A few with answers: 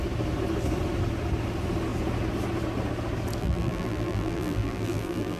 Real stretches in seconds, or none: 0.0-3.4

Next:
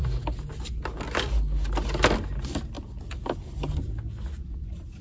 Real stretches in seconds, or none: 0.0-5.0

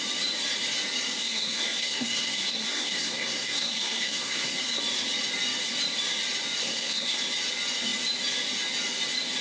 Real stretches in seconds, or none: 0.0-1.2; 4.8-6.6; 7.2-9.4

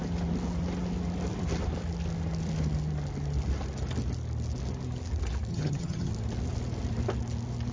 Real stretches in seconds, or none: 0.0-5.5; 6.1-7.7

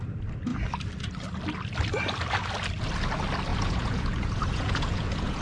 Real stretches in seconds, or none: 0.0-3.5

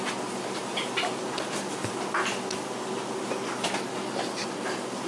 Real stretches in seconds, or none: 0.0-5.1

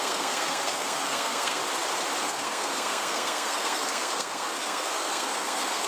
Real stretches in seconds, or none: 1.6-2.2

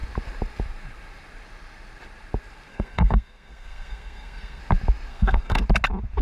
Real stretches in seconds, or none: 0.0-2.7; 4.6-5.1; 5.6-6.2